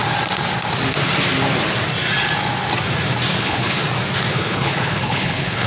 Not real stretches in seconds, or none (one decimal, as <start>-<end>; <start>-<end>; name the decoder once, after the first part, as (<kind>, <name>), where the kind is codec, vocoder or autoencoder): 3.4-3.8 (codec, HILCodec); 4.3-5.7